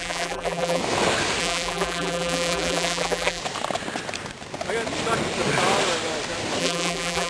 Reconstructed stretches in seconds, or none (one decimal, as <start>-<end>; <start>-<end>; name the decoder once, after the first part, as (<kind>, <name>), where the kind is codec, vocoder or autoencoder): 0.0-0.8 (vocoder, BigVGAN v2); 1.4-3.4; 6.6-7.3